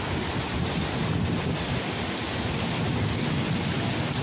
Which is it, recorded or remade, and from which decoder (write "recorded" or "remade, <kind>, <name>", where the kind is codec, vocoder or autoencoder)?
recorded